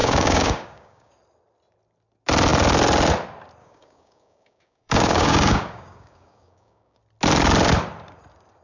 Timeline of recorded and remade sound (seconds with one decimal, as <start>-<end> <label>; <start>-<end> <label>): 0.0-1.1 remade; 1.1-3.6 recorded; 3.6-7.0 remade; 7.0-8.6 recorded